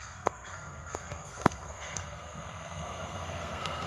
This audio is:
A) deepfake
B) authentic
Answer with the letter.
A